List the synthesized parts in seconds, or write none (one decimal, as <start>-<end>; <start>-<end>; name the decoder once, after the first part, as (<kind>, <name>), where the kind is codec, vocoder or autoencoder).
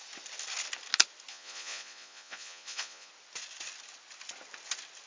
1.3-3.1 (vocoder, Vocos)